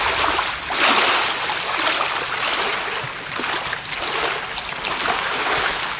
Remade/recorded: recorded